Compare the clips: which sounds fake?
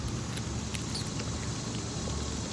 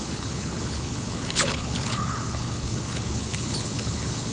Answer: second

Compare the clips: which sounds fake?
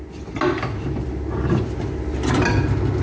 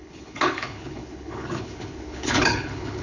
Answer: second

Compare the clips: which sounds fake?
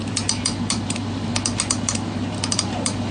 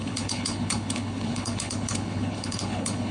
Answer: second